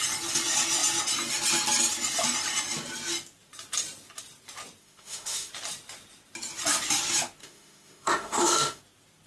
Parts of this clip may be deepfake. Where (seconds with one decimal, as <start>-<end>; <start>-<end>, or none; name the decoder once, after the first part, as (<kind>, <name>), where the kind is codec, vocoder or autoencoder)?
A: 4.8-5.5 (autoencoder, DAC-VAE); 7.4-8.8